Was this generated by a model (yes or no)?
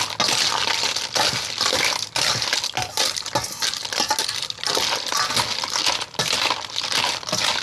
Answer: no